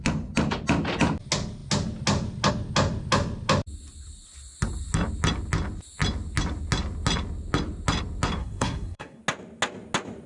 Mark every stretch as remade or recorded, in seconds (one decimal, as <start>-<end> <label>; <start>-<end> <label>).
0.0-8.4 recorded; 8.4-9.2 remade; 9.2-10.3 recorded